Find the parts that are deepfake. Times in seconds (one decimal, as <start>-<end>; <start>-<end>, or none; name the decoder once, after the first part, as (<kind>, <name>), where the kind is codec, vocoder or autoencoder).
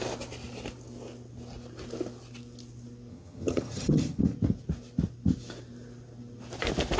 3.1-4.2 (vocoder, HiFi-GAN)